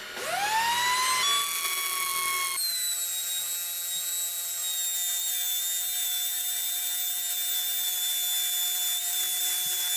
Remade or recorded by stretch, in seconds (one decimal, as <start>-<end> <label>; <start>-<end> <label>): 0.0-10.0 recorded